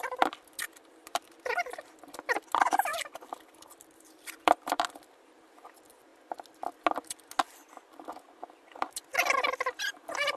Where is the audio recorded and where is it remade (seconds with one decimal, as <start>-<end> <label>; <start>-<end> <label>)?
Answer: 0.0-6.1 remade; 6.1-8.1 recorded; 8.1-9.1 remade; 9.1-9.9 recorded; 9.9-10.4 remade